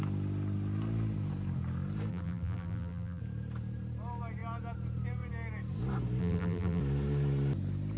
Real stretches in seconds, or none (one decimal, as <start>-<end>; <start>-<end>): 0.0-2.1; 3.2-6.2; 6.8-8.0